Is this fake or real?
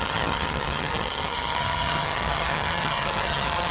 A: fake